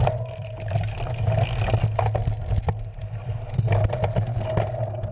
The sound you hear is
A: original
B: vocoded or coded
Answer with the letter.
A